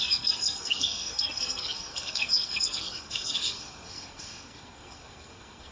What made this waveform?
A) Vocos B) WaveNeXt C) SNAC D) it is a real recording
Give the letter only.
C